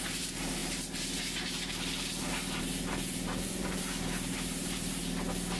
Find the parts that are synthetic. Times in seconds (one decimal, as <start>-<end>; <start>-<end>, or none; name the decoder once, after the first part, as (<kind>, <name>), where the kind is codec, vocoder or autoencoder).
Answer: 0.0-5.0 (vocoder, BigVGAN v2)